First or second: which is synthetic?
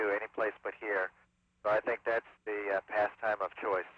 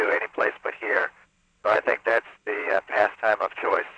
second